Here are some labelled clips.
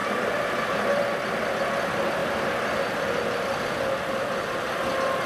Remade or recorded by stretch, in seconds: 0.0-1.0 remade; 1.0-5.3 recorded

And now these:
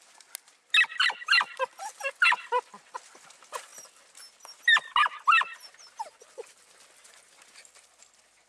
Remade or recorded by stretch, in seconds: 0.0-8.5 recorded